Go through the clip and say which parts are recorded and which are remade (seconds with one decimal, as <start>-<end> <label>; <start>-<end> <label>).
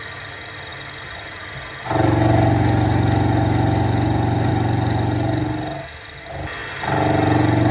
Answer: 0.0-7.7 recorded